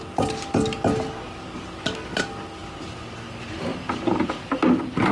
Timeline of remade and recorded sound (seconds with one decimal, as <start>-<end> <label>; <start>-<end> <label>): 0.0-5.1 recorded